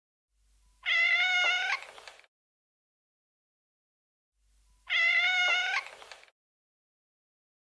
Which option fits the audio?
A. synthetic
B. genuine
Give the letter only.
B